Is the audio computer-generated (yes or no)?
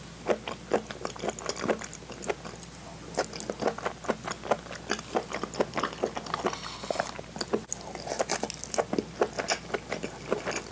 no